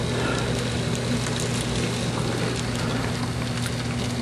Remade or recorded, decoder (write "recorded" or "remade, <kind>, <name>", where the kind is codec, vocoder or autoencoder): recorded